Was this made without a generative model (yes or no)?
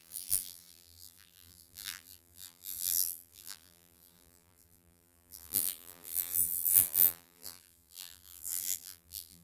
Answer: no